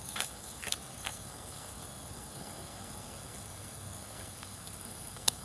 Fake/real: fake